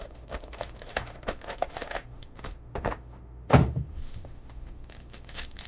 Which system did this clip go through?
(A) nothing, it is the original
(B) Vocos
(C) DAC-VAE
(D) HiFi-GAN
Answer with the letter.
C